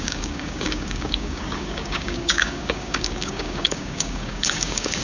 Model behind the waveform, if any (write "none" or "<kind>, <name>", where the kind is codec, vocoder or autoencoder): codec, DAC